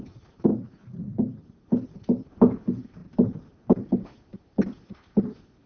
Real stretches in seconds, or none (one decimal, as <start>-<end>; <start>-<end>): 0.0-5.7